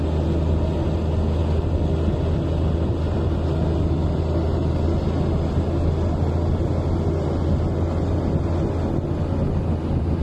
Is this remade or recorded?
recorded